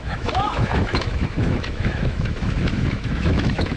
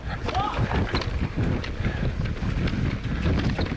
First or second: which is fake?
first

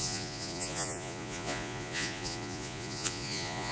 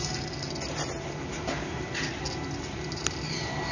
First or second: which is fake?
first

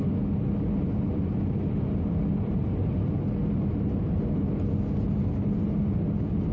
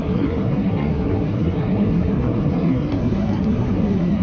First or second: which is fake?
second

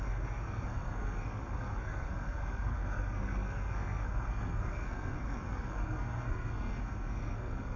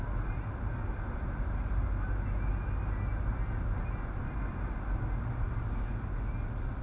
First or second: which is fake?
first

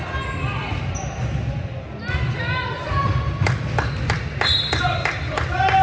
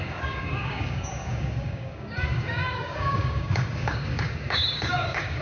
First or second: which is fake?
second